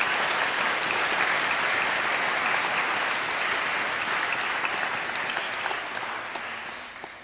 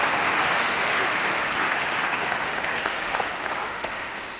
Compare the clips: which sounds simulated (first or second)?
second